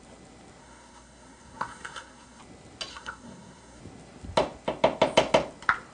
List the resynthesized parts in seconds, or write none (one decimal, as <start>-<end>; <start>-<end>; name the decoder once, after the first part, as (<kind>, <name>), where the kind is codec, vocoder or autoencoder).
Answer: 0.6-2.4 (codec, SNAC); 2.9-3.8